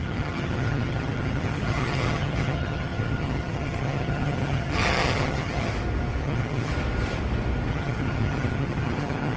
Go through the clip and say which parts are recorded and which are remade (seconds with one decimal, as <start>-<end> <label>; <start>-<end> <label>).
0.0-5.7 remade; 5.7-6.2 recorded; 6.2-6.7 remade; 6.7-7.7 recorded; 7.7-9.4 remade